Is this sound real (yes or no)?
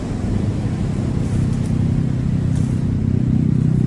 yes